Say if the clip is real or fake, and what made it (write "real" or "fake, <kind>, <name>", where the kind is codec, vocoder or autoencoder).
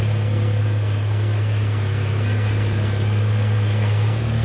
fake, codec, SNAC